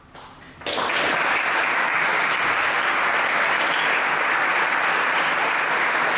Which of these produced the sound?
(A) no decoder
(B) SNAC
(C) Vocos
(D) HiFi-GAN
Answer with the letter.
A